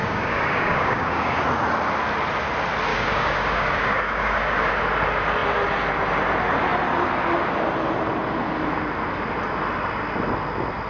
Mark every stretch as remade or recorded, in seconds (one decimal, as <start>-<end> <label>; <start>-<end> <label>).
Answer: 0.0-1.4 remade; 1.4-2.9 recorded; 2.9-4.7 remade; 4.7-10.9 recorded